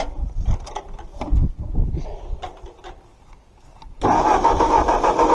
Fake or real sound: real